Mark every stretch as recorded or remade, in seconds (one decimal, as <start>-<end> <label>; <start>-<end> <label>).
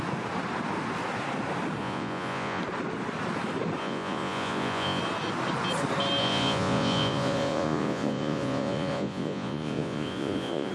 0.0-1.8 recorded; 1.8-2.6 remade; 2.6-3.8 recorded; 3.8-5.0 remade; 5.0-6.2 recorded; 6.2-10.7 remade